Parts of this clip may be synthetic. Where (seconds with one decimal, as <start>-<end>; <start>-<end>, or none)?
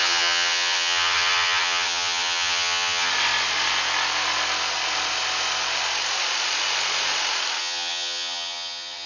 0.0-3.1; 7.6-9.1